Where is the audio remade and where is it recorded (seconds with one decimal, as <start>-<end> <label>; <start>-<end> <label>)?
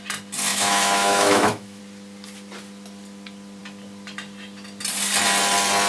0.0-0.5 recorded; 0.5-1.8 remade; 1.8-5.9 recorded